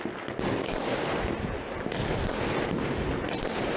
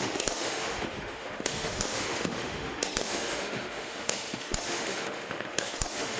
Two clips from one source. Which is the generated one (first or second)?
second